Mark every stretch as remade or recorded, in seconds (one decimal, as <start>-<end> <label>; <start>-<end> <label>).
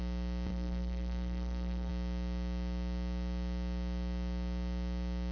0.0-0.5 recorded; 0.5-1.9 remade; 1.9-5.3 recorded